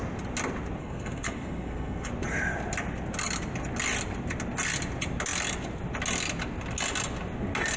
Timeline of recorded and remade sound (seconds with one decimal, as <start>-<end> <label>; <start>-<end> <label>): 0.0-0.8 recorded; 0.8-2.1 remade; 2.1-7.8 recorded